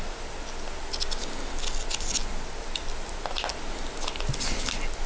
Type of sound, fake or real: real